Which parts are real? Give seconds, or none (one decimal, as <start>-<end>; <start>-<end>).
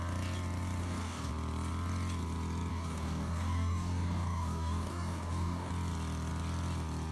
0.0-0.8; 1.3-2.7; 5.7-7.1